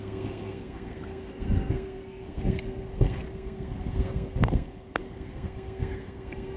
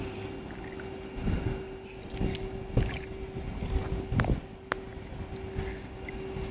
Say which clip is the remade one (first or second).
first